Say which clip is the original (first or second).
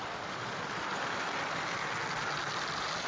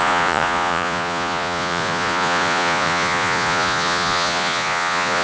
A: first